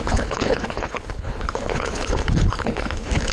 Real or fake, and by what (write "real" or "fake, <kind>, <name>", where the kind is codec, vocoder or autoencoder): fake, codec, HILCodec